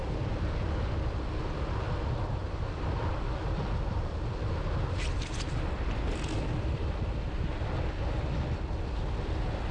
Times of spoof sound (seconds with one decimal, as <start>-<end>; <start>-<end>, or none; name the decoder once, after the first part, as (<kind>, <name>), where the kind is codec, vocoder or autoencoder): 2.4-7.6 (vocoder, BigVGAN v2)